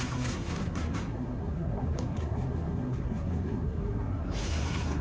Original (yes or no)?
no